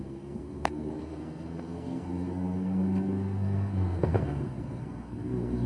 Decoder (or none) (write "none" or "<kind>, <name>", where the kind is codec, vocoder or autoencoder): codec, SNAC